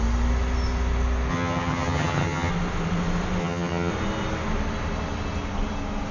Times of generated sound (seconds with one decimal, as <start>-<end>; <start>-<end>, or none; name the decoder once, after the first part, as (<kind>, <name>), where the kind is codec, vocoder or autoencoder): 1.3-2.5 (vocoder, HiFi-GAN); 3.4-3.9